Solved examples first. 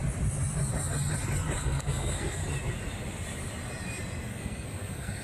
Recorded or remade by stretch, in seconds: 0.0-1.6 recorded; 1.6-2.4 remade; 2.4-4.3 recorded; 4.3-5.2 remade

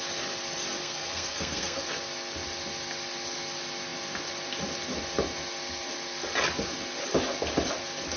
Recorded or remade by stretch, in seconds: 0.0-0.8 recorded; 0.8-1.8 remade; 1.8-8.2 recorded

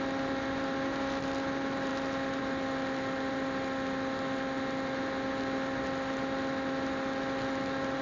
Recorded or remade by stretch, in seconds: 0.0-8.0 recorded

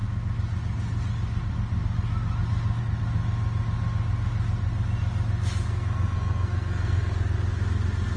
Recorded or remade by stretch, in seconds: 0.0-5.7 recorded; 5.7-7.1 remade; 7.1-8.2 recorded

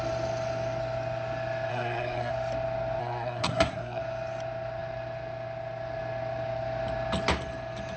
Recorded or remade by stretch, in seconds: 0.0-1.7 recorded; 1.7-2.3 remade; 2.3-3.0 recorded; 3.0-4.0 remade; 4.0-8.0 recorded

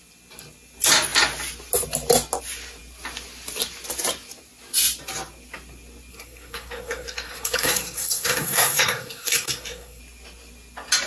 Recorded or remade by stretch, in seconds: 0.0-6.1 recorded; 6.1-10.0 remade; 10.0-11.1 recorded

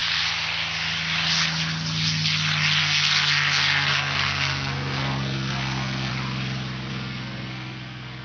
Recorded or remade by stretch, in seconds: 0.0-2.8 recorded; 2.8-6.1 remade; 6.1-6.9 recorded; 6.9-8.2 remade

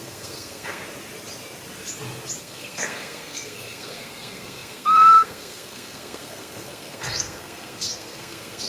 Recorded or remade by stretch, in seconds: 0.0-0.8 remade; 0.8-2.4 recorded; 2.4-8.7 remade